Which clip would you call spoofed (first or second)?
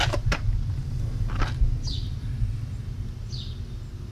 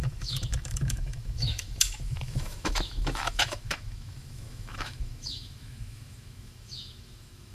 second